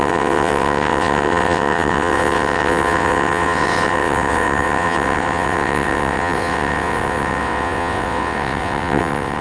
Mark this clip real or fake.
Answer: fake